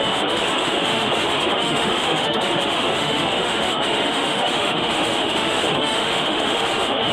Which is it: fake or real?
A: fake